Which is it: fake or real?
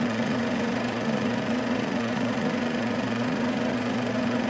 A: fake